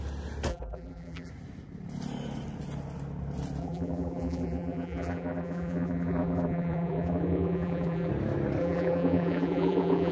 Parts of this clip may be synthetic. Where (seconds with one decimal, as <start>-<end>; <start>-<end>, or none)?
0.5-1.3; 3.6-8.1; 8.6-10.1